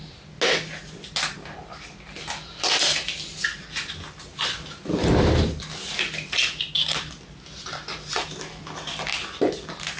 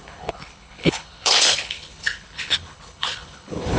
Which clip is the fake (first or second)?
second